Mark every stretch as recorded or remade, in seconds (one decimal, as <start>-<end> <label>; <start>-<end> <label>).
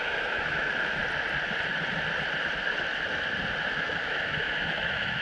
0.0-1.0 remade; 1.0-3.7 recorded; 3.7-5.2 remade